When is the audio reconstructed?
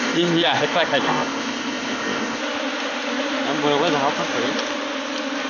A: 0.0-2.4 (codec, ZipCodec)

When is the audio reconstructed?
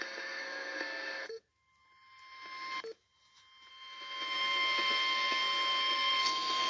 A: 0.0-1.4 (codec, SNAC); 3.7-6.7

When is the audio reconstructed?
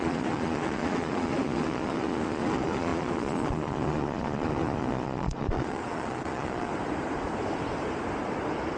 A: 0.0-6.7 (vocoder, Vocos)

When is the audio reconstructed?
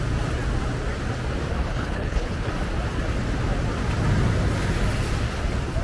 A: 1.7-2.5 (codec, HILCodec)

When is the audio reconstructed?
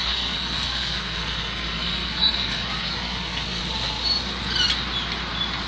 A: 0.0-3.6 (codec, SNAC)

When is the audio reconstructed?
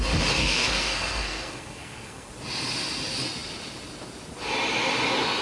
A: 0.4-2.3 (codec, SNAC)